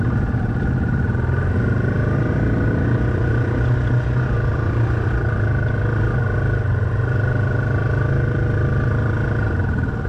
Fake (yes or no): no